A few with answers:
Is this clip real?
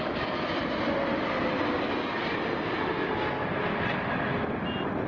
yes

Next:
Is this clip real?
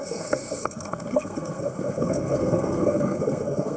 no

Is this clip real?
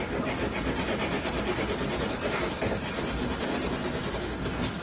yes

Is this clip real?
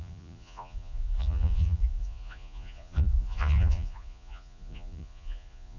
no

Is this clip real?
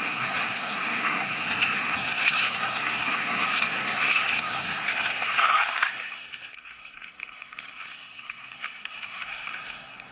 no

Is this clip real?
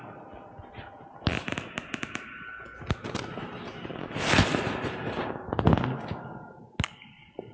yes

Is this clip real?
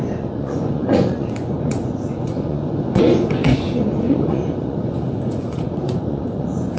no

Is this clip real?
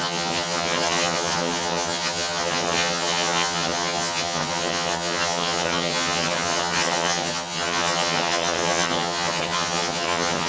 no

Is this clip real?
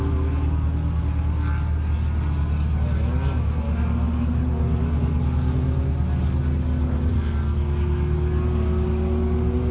yes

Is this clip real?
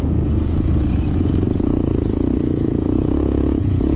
no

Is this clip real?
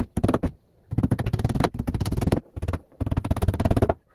no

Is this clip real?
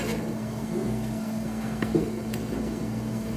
no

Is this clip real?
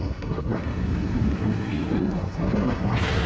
no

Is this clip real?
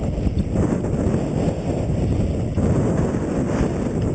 yes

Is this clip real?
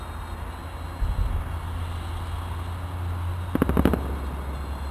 yes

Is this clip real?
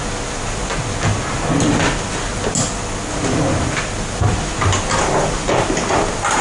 yes